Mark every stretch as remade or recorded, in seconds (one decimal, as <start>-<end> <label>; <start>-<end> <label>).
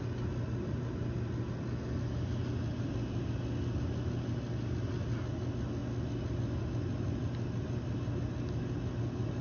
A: 0.0-9.4 recorded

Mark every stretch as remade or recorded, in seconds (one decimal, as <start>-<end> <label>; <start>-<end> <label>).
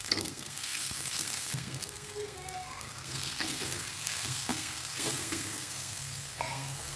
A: 0.0-7.0 remade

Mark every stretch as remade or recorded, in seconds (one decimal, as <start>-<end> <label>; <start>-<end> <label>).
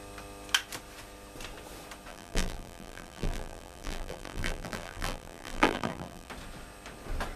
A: 0.0-2.1 recorded; 2.1-6.3 remade; 6.3-7.4 recorded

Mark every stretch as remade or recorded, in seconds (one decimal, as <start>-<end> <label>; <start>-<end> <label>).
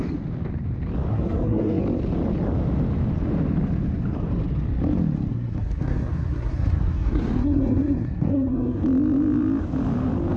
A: 0.0-1.1 recorded; 1.1-1.8 remade; 1.8-5.3 recorded; 5.3-8.8 remade; 8.8-10.4 recorded